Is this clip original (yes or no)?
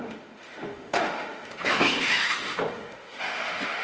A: no